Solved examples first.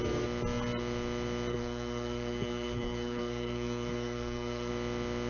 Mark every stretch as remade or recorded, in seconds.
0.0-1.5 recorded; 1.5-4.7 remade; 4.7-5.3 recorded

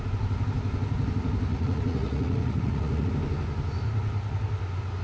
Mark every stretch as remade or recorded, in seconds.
0.0-1.5 recorded; 1.5-3.1 remade; 3.1-5.0 recorded

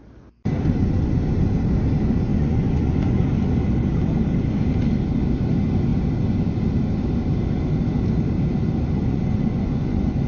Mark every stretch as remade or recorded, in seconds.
0.0-2.3 recorded; 2.3-3.3 remade; 3.3-9.0 recorded; 9.0-10.3 remade

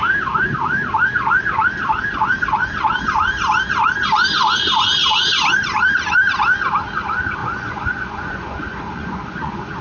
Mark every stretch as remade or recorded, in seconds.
0.0-7.4 recorded; 7.4-9.8 remade

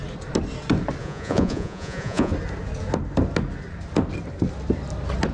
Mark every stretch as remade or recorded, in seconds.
0.0-1.0 recorded; 1.0-2.3 remade; 2.3-5.3 recorded